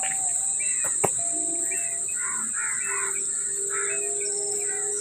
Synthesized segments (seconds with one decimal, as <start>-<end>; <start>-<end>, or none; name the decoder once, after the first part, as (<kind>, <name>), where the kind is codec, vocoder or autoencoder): none